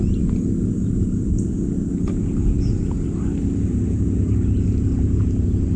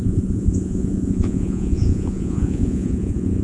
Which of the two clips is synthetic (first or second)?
second